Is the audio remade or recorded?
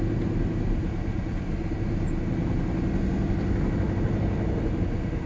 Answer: recorded